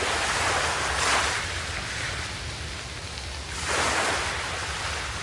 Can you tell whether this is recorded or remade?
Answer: recorded